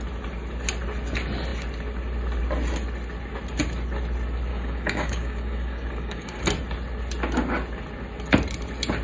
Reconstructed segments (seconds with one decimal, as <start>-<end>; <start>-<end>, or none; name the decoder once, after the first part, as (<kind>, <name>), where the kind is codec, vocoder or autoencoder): 4.5-6.4 (codec, DAC)

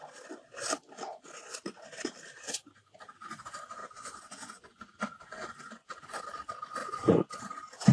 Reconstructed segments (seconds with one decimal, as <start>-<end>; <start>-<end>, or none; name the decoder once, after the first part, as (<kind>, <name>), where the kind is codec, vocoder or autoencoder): 3.8-6.2 (vocoder, Vocos); 6.8-7.4

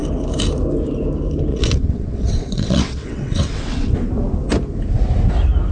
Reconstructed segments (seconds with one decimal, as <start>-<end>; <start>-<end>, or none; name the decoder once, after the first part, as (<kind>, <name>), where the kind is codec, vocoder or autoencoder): 1.5-3.9 (vocoder, WaveNeXt)

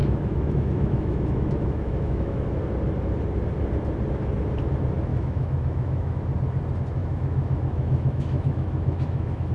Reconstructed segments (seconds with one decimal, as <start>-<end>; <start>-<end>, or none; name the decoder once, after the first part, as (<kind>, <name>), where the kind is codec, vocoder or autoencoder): 0.0-2.6 (autoencoder, DAC-VAE); 5.1-6.2; 7.0-9.5

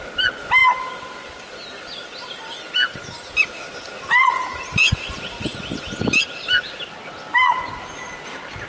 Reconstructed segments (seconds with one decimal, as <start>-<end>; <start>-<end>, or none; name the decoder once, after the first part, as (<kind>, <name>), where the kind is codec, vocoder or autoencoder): none

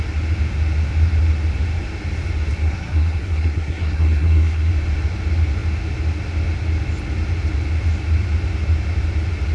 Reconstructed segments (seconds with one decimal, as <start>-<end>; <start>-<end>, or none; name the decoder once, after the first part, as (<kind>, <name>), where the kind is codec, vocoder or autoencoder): 2.6-4.7 (codec, SNAC)